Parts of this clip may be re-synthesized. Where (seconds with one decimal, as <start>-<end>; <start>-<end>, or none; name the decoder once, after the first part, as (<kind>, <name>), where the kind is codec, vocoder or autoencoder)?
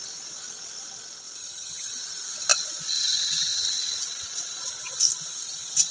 1.4-2.0 (vocoder, HiFi-GAN)